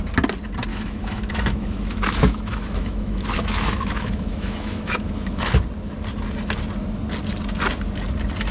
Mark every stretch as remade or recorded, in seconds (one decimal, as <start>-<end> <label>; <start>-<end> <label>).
0.0-0.7 recorded; 0.7-5.5 remade; 5.5-8.5 recorded